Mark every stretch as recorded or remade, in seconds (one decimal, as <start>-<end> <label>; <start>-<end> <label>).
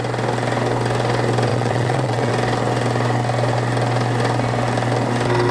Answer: 0.0-1.5 recorded; 1.5-2.3 remade; 2.3-5.5 recorded